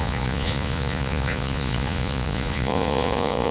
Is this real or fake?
fake